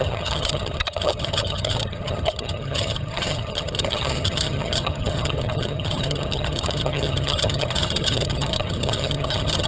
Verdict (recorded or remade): remade